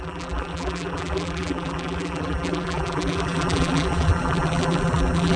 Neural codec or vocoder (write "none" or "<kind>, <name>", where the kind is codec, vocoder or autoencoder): vocoder, BigVGAN v2